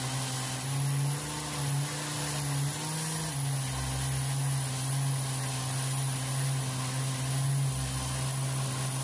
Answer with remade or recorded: recorded